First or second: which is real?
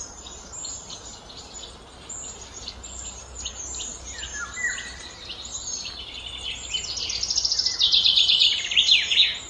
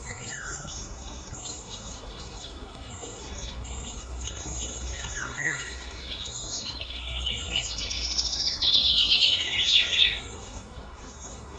first